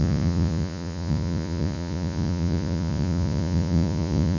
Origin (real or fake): fake